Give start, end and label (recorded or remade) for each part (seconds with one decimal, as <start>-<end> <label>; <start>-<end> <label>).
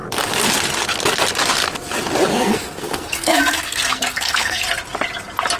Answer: 0.0-2.3 recorded; 2.3-4.6 remade; 4.6-5.6 recorded